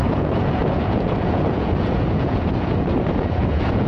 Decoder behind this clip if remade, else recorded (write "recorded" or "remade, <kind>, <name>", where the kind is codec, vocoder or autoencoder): remade, vocoder, Vocos